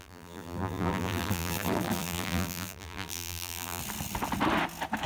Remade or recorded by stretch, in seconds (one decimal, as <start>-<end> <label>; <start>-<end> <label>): 0.0-3.8 remade; 3.8-5.1 recorded